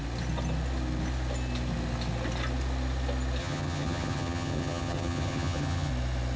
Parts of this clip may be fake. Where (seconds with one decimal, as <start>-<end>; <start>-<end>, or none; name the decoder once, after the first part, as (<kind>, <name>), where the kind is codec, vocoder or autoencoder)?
3.4-5.9 (vocoder, HiFi-GAN)